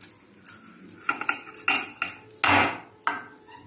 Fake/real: real